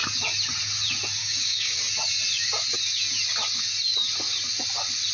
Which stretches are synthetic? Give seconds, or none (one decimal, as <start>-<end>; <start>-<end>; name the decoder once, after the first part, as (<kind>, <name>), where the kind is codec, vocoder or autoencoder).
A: 1.2-1.8 (codec, DAC)